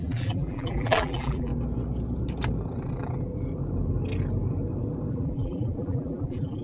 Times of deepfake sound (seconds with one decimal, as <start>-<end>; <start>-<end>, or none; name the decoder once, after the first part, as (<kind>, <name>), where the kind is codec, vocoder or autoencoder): 0.0-1.5 (vocoder, BigVGAN v2); 5.1-6.6

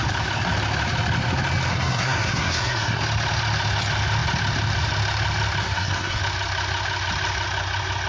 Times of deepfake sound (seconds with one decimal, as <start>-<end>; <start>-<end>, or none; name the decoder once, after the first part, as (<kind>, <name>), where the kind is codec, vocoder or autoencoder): 1.7-3.0 (codec, SNAC); 5.6-6.2

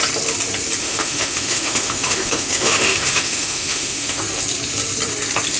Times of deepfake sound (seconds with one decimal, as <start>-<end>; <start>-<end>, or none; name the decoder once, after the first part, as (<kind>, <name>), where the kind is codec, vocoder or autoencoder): 0.8-4.2 (autoencoder, DAC-VAE)

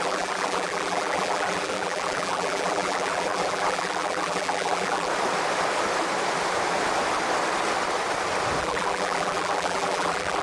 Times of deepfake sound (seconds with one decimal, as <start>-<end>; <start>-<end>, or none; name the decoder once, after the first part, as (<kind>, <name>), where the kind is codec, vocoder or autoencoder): 0.0-5.1 (vocoder, BigVGAN v2); 8.6-10.4